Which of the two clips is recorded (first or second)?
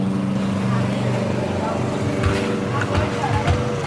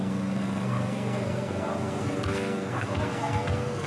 first